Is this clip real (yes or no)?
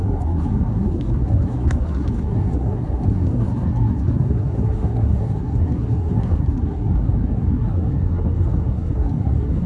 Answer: no